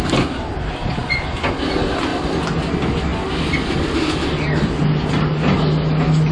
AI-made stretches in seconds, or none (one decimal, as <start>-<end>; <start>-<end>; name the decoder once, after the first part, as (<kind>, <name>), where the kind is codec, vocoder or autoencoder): none